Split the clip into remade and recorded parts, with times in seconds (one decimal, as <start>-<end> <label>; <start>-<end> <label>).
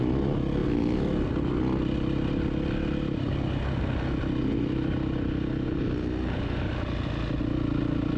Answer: 0.0-8.2 recorded